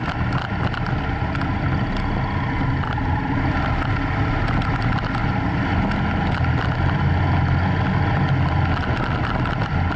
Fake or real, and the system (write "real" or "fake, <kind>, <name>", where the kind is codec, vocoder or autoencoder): real